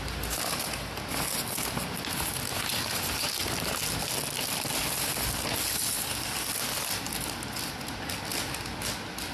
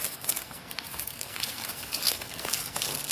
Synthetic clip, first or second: second